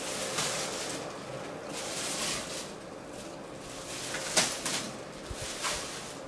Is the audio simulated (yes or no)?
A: no